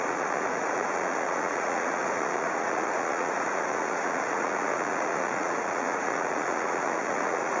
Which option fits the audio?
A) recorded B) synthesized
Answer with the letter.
B